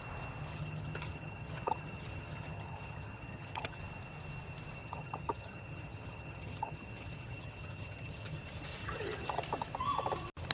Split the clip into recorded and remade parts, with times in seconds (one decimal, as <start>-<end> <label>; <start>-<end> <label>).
0.0-0.5 recorded; 0.5-3.8 remade; 3.8-4.8 recorded; 4.8-8.4 remade; 8.4-8.8 recorded; 8.8-9.4 remade; 9.4-10.5 recorded